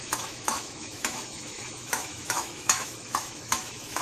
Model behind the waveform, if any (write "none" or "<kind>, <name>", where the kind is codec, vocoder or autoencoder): autoencoder, DAC-VAE